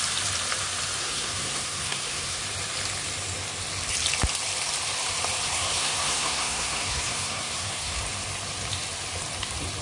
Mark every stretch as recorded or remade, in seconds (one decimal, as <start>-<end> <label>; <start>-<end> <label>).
0.0-1.0 recorded; 1.0-2.4 remade; 2.4-5.5 recorded; 5.5-8.0 remade; 8.0-9.8 recorded

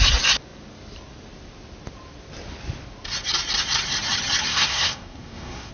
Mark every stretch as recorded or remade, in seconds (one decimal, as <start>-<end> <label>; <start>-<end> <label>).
0.0-4.5 recorded; 4.5-5.7 remade

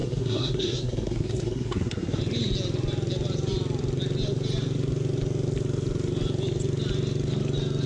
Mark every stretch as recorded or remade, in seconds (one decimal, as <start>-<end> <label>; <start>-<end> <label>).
0.0-2.2 remade; 2.2-7.9 recorded